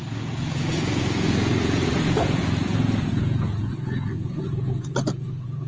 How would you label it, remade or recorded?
remade